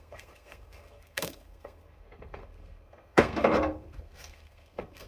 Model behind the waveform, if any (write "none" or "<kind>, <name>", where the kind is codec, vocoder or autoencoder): codec, SNAC